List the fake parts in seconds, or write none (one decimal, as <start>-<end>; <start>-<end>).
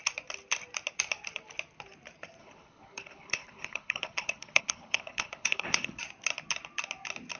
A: 2.4-6.0